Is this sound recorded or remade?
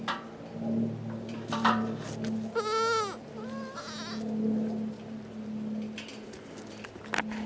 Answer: recorded